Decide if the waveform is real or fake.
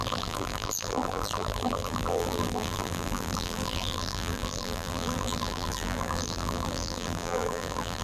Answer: fake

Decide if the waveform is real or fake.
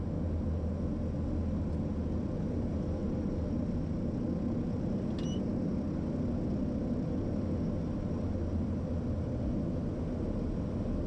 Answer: real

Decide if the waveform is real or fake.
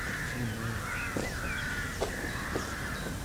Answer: real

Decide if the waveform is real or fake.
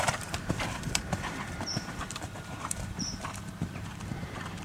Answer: fake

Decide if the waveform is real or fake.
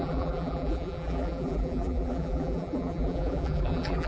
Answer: fake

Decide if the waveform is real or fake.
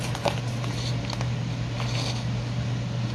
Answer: real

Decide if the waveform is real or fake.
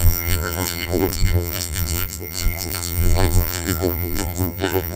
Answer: fake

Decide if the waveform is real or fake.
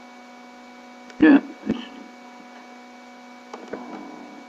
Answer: real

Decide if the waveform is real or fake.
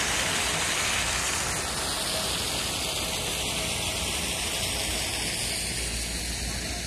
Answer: real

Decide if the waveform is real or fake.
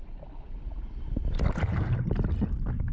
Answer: real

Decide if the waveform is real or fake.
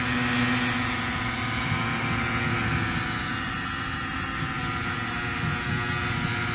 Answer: real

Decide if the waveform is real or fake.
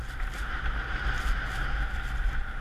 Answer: real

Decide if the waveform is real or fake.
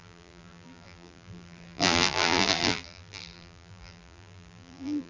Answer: fake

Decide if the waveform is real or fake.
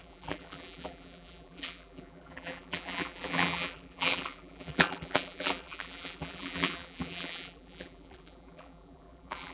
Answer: fake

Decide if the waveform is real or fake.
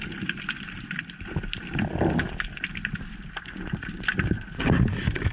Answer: fake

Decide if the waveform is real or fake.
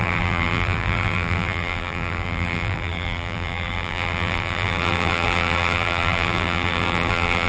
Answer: fake